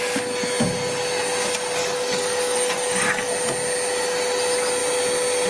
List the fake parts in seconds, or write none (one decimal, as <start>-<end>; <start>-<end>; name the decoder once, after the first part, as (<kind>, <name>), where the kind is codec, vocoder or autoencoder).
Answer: 1.8-3.3 (codec, DAC)